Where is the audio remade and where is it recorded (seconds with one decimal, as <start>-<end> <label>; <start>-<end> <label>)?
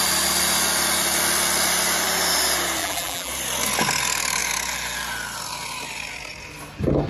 0.0-2.8 recorded; 2.8-3.3 remade; 3.3-7.1 recorded